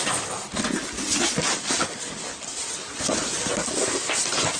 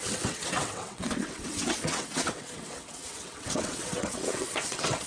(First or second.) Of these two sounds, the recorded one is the first